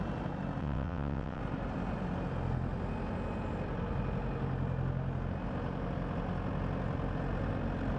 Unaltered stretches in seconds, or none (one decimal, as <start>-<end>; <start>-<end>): 0.0-0.6; 1.4-8.0